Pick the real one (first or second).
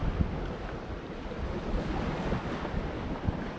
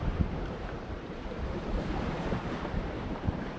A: first